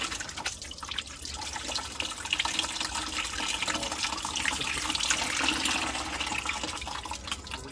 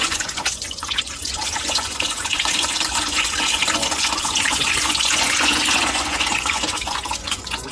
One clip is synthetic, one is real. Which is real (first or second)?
first